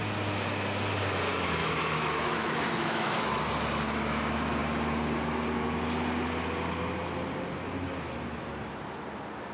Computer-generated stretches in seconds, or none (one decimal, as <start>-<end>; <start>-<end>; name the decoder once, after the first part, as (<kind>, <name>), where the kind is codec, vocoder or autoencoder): 1.6-3.4 (autoencoder, DAC-VAE)